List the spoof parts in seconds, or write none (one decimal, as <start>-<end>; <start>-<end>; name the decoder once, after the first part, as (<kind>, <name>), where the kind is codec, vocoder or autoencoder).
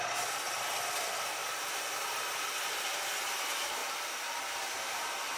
1.4-2.2 (vocoder, BigVGAN v2); 3.8-5.4